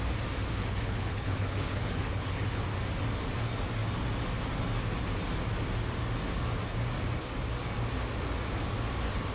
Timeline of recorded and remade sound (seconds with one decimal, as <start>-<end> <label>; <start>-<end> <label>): 0.0-0.6 recorded; 0.6-2.6 remade; 2.6-9.3 recorded